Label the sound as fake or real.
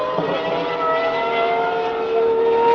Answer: real